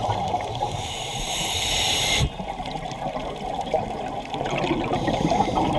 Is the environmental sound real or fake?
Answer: fake